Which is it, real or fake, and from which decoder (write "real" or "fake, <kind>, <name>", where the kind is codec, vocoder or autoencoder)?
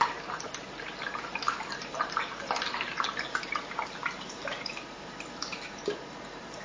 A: fake, vocoder, BigVGAN v2